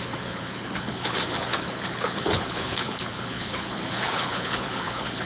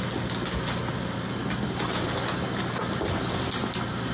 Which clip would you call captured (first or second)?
second